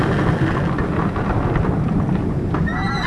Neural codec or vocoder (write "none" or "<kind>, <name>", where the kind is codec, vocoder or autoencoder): none